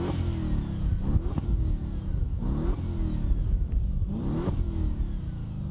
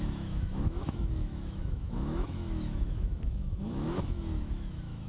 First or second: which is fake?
second